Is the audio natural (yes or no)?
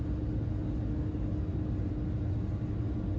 yes